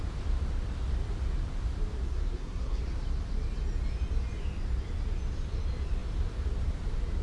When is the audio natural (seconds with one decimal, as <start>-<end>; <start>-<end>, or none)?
0.0-2.1; 2.8-7.2